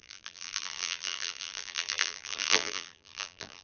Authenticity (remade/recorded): remade